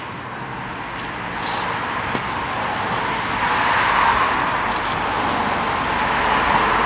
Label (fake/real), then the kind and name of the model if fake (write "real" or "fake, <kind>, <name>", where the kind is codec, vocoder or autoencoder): real